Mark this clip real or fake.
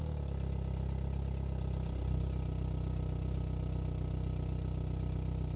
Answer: real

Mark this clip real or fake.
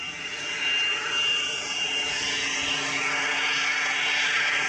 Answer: real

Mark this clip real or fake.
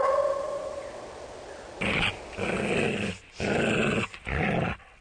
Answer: real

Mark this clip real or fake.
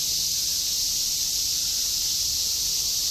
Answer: real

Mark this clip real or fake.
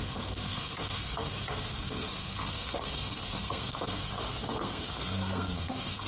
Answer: fake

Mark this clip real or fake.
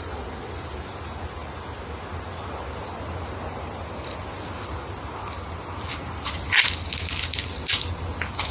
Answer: real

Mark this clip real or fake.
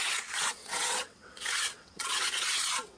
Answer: fake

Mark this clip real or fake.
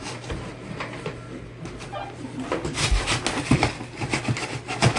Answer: real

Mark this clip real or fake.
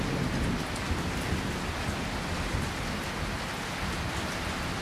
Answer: real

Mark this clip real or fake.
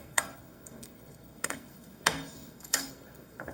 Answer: fake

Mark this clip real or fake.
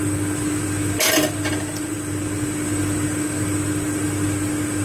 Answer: real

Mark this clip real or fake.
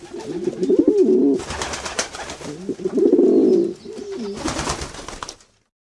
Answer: real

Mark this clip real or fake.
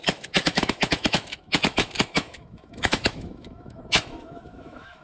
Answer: fake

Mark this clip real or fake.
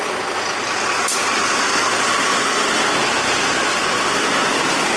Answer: fake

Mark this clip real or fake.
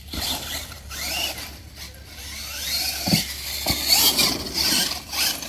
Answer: fake